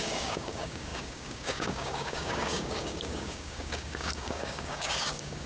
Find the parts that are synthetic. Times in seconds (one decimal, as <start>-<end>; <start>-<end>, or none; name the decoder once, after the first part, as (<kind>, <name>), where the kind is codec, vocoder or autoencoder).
0.0-5.5 (codec, DAC)